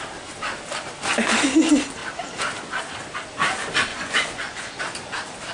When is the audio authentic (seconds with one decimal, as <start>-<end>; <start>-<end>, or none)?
0.0-3.9; 4.8-5.5